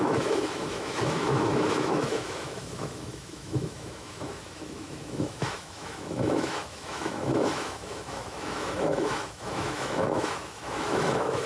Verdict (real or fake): fake